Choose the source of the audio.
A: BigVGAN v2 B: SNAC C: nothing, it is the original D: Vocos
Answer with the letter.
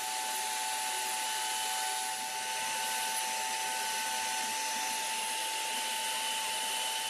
C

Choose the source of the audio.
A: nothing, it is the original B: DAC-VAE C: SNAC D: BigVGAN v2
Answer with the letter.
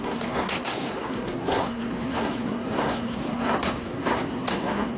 C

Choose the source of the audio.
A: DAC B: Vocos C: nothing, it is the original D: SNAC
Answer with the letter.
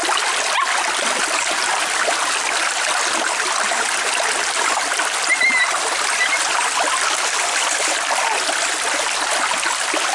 C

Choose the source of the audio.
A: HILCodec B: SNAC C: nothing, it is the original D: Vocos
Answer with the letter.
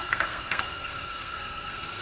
B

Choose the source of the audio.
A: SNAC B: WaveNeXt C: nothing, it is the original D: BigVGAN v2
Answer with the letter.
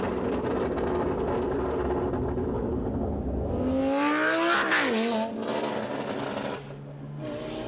C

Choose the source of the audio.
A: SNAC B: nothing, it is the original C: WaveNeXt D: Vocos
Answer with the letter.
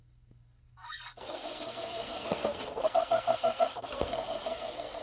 A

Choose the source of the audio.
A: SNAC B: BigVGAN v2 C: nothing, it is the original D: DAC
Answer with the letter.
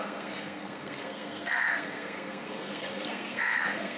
A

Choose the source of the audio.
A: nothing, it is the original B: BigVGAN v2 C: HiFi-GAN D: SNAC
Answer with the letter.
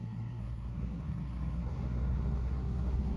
D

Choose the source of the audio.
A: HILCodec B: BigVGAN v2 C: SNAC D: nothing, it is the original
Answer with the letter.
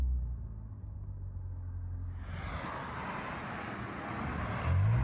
D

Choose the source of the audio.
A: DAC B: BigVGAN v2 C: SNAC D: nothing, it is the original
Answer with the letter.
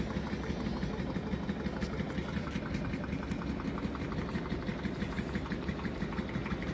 D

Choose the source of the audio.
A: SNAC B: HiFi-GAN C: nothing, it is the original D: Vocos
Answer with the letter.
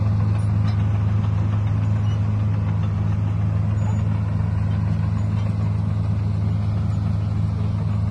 C